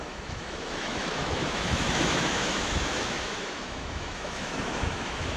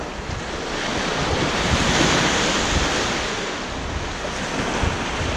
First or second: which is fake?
first